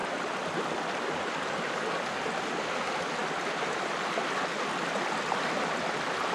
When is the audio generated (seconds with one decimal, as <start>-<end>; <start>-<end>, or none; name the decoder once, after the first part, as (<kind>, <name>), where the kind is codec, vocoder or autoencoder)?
none